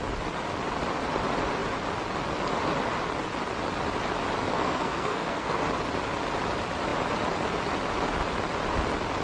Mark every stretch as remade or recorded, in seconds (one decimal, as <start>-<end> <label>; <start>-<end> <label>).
0.0-4.5 recorded; 4.5-5.6 remade; 5.6-9.2 recorded